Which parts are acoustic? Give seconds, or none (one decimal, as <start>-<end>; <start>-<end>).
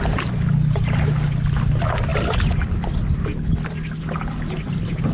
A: 0.0-5.1